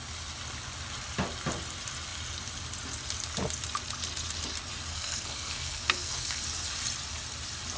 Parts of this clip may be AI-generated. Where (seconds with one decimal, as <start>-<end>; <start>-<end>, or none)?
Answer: 4.9-6.4